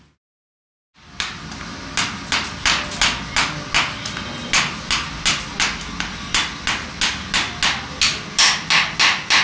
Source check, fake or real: real